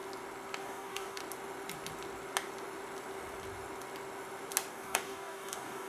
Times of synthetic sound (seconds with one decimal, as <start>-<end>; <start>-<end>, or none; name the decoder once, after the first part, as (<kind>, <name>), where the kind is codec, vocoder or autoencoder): 0.6-1.2 (codec, DAC); 4.7-5.9